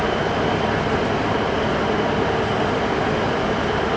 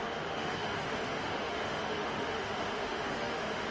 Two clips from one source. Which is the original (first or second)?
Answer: first